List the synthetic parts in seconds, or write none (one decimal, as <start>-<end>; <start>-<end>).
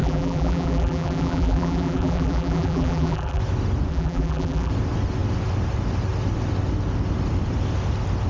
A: 0.0-3.4; 3.9-4.7